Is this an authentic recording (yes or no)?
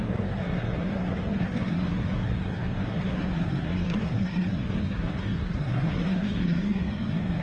no